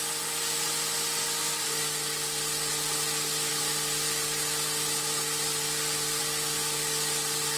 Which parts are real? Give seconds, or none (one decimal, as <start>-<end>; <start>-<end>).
0.0-7.6